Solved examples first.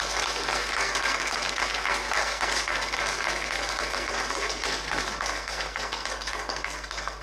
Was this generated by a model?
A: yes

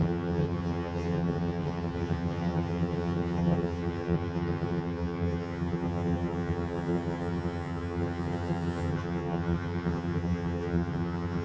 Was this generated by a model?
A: yes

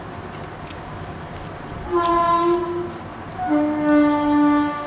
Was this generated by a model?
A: no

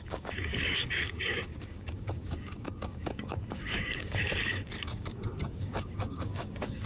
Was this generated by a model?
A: yes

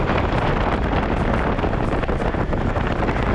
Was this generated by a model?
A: no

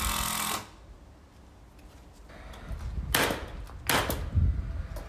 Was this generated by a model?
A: no